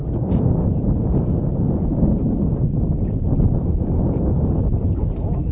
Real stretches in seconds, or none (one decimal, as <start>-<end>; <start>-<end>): 0.0-5.5